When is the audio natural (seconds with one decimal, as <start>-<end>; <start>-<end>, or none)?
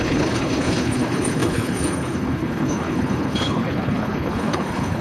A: none